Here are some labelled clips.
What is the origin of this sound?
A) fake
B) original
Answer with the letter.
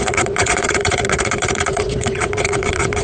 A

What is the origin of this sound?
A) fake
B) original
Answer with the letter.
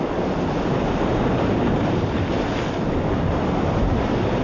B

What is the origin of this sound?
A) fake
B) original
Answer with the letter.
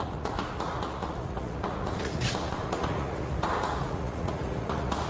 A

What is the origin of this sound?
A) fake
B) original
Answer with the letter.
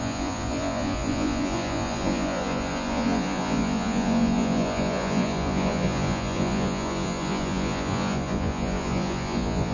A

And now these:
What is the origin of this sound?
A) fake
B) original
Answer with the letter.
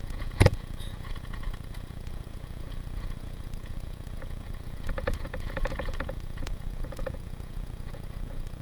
A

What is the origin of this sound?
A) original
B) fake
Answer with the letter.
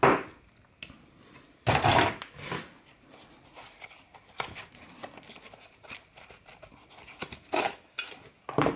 A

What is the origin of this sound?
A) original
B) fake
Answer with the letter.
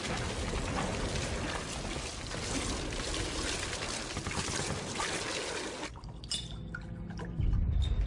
A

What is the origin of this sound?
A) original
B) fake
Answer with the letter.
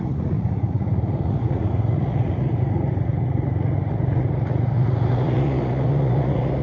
B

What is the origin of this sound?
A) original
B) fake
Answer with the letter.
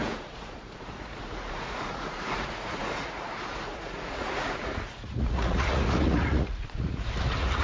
B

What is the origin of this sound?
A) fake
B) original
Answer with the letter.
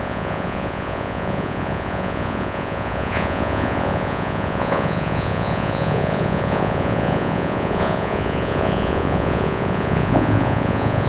A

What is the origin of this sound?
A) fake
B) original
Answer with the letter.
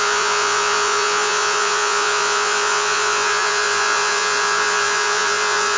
A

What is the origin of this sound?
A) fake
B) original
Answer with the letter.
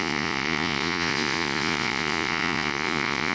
A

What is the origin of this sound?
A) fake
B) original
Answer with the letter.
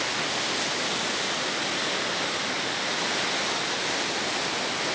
B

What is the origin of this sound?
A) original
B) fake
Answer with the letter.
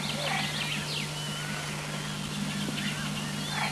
A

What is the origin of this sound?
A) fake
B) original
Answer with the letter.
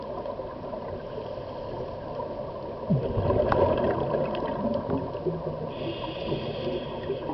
B